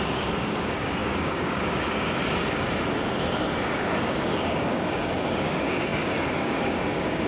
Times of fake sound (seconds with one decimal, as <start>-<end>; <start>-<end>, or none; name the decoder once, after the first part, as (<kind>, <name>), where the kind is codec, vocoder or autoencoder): 0.0-2.2 (codec, DAC); 3.6-7.3